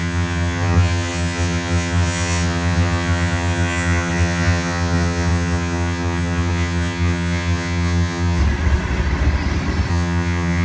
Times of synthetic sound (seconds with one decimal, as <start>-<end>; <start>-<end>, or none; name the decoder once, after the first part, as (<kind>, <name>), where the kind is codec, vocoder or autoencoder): 0.0-8.4 (vocoder, HiFi-GAN); 9.9-10.6